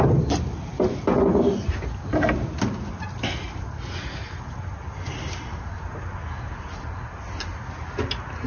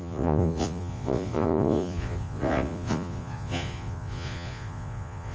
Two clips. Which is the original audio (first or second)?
first